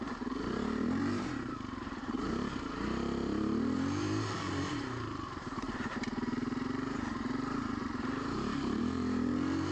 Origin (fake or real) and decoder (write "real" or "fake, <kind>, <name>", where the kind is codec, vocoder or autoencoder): fake, vocoder, BigVGAN v2